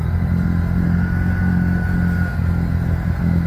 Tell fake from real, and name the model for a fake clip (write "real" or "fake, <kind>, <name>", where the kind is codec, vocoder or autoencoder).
real